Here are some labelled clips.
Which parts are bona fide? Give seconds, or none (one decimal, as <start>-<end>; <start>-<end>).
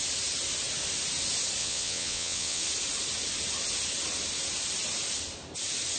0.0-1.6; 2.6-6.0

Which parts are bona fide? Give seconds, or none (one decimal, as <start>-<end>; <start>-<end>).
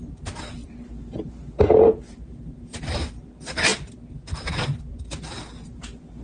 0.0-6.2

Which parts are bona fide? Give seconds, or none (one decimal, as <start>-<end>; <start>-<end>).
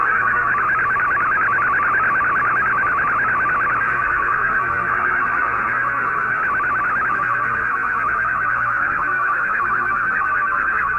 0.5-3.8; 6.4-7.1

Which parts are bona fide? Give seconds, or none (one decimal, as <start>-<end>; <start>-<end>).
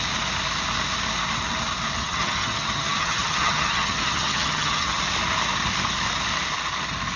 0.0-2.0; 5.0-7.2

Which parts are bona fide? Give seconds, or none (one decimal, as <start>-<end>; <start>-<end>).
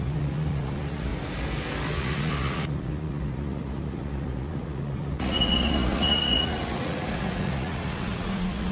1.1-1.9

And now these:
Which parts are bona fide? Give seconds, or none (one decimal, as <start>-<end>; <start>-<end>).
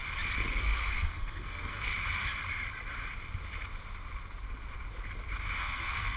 0.0-0.6; 1.9-5.6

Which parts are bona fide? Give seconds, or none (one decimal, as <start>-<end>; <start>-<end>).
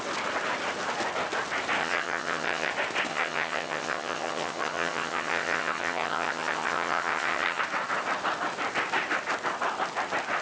0.0-1.8; 2.7-3.1; 7.6-10.4